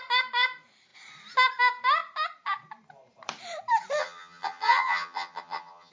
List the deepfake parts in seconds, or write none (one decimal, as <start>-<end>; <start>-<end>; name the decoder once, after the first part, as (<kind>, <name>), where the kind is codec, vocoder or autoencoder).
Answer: 4.0-5.9 (vocoder, HiFi-GAN)